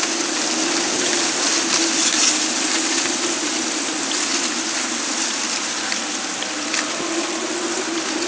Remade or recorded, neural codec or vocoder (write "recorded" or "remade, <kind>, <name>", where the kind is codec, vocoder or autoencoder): recorded